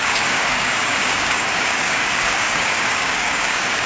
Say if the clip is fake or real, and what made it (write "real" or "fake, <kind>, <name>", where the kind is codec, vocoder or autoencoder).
fake, codec, DAC